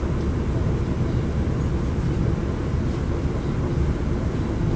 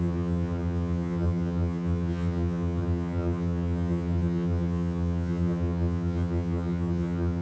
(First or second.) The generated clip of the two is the second